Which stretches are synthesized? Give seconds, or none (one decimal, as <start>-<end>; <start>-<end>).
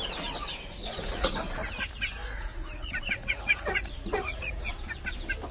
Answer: 0.8-1.3; 2.2-4.7